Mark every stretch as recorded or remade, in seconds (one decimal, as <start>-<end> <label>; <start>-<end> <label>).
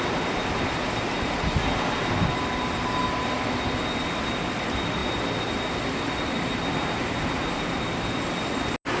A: 0.0-9.0 recorded